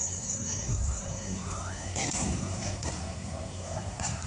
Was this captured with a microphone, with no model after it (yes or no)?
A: no